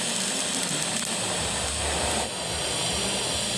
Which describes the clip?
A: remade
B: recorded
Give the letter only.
B